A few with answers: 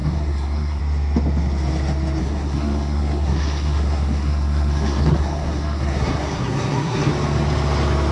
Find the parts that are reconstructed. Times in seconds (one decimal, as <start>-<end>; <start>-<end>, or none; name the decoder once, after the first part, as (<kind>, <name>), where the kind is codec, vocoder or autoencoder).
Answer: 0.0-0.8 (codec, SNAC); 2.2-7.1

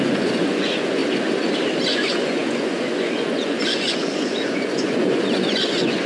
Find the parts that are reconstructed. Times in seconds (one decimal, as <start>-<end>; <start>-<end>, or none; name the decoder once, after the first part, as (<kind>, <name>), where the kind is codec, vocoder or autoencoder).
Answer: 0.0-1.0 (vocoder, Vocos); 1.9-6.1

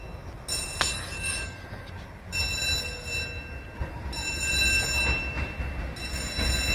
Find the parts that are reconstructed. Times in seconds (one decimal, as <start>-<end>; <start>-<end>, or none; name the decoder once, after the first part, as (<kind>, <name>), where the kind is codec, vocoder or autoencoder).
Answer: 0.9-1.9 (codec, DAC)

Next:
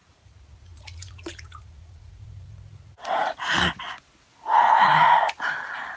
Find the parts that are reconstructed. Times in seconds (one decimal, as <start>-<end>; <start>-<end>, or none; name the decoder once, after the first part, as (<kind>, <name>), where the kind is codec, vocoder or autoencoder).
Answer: 0.0-3.6 (vocoder, Vocos); 4.5-5.2